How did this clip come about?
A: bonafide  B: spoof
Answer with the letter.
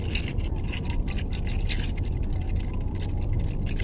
A